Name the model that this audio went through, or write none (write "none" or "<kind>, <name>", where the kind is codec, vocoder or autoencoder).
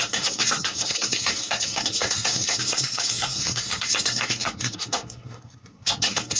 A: codec, SNAC